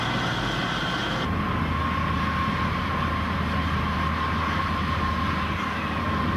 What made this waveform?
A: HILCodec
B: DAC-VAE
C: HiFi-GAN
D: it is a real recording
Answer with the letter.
D